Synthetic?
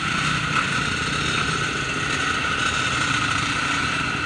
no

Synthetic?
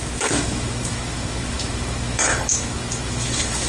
yes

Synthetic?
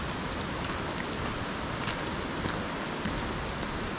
no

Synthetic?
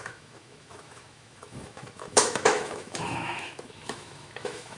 yes